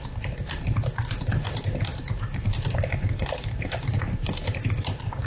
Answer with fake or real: fake